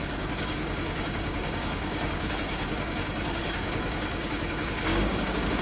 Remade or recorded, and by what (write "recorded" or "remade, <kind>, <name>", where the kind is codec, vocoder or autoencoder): remade, codec, DAC